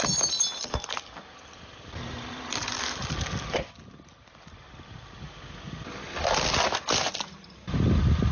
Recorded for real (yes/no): yes